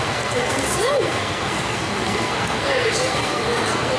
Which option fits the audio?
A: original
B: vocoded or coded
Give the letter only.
B